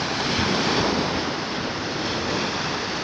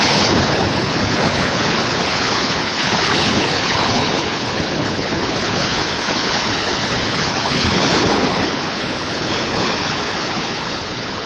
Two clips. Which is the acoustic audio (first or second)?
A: first